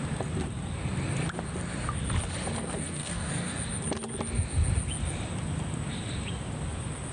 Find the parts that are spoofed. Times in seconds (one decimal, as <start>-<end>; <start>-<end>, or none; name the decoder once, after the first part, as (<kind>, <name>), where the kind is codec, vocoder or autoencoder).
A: 2.6-3.5 (codec, SNAC)